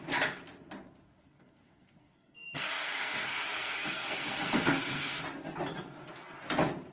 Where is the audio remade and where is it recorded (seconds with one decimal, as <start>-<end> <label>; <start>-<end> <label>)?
0.0-1.2 recorded; 1.2-5.1 remade; 5.1-6.9 recorded